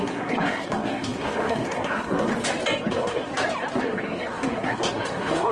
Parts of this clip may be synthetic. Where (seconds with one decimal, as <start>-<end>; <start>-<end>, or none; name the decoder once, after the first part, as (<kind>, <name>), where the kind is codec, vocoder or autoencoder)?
0.0-2.3 (codec, SNAC); 2.9-3.3; 3.8-5.5